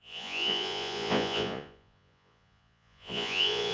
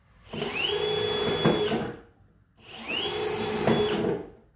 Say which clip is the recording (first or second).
second